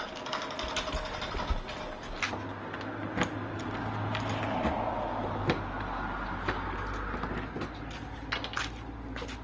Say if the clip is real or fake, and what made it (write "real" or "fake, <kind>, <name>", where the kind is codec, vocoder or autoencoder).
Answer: real